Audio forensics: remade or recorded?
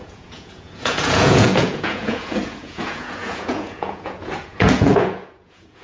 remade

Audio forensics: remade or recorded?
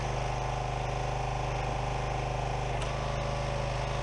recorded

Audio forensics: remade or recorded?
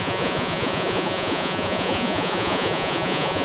remade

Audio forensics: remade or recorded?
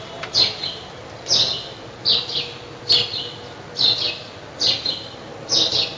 recorded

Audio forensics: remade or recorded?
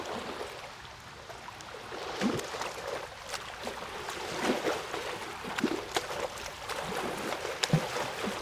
recorded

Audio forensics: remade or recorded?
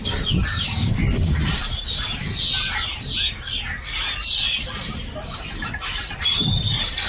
remade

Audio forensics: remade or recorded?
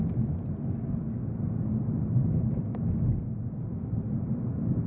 remade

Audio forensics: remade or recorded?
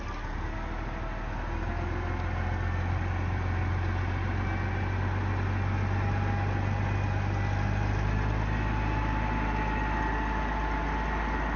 recorded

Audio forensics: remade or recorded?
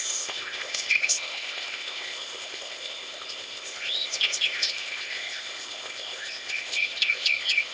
remade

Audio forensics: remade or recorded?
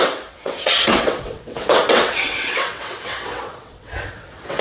remade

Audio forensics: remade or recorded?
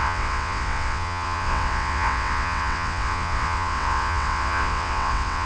remade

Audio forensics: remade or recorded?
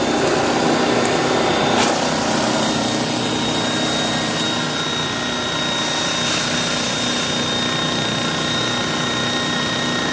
recorded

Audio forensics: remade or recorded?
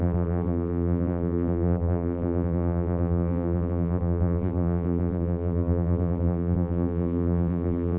remade